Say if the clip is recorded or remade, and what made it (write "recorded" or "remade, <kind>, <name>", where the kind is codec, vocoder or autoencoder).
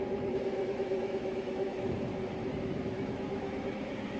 remade, autoencoder, DAC-VAE